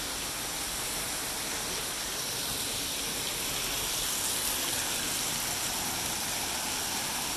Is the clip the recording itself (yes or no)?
yes